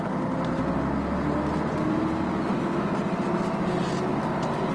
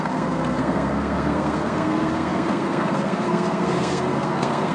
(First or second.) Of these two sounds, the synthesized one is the second